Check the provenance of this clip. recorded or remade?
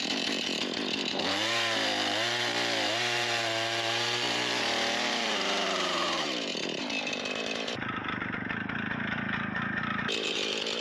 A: remade